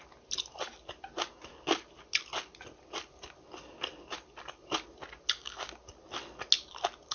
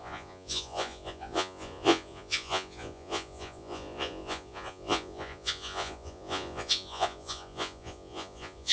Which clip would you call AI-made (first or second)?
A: second